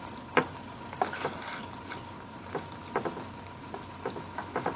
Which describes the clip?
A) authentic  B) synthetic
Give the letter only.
A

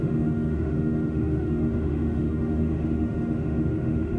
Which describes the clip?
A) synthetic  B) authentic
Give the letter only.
A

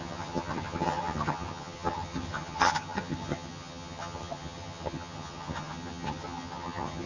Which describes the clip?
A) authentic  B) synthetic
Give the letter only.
B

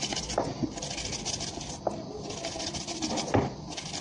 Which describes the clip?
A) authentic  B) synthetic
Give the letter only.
A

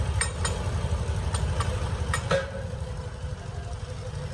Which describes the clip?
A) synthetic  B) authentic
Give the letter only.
A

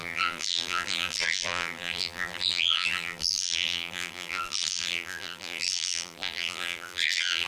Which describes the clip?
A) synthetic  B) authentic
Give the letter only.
A